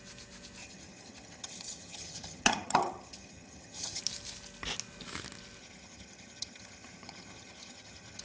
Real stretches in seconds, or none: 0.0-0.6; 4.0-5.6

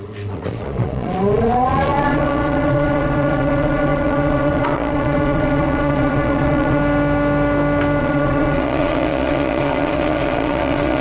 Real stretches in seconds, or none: 6.8-8.0